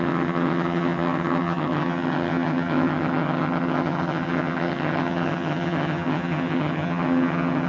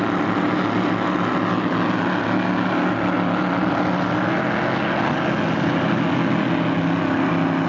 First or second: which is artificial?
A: first